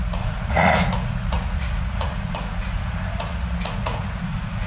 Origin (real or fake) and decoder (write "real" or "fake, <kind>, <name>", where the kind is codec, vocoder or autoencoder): fake, vocoder, Vocos